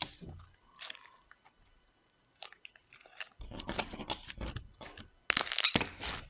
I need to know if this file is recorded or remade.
recorded